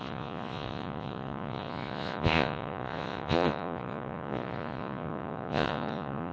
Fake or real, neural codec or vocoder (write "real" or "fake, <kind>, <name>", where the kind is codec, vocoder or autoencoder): fake, vocoder, Vocos